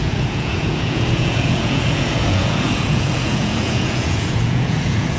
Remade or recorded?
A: remade